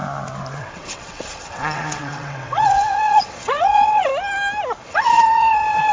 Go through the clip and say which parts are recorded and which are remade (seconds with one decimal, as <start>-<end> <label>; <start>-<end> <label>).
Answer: 0.0-0.6 recorded; 0.6-4.1 remade; 4.1-4.8 recorded; 4.8-5.9 remade